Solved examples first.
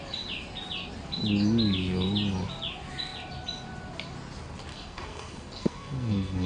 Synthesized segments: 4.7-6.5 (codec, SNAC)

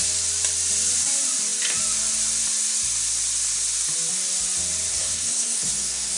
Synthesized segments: 4.9-6.2 (codec, SNAC)

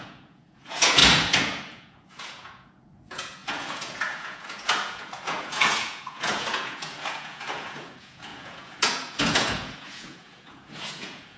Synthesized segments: 0.0-11.4 (vocoder, Vocos)

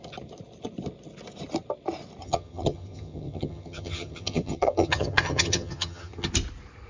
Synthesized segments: 2.2-6.3 (vocoder, HiFi-GAN)

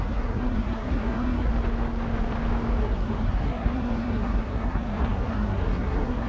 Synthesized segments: 0.0-1.5 (codec, SNAC); 2.8-6.3